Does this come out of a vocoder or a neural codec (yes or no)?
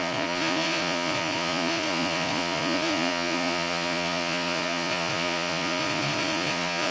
yes